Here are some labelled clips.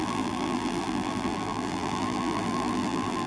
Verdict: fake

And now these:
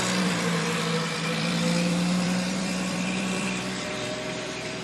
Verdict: fake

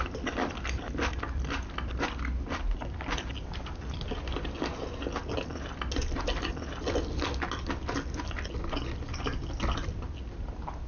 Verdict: real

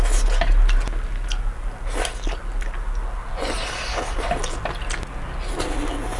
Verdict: real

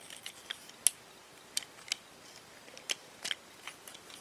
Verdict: real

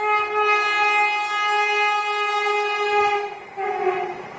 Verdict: real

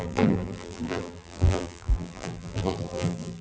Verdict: fake